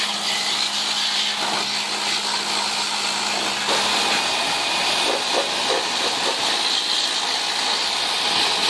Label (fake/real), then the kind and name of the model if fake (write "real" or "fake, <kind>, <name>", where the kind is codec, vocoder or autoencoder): real